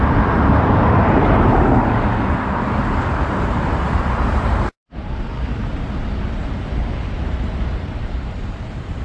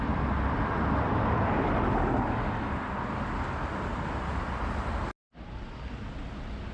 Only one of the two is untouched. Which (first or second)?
second